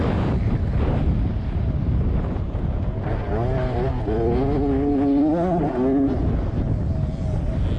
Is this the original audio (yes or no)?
yes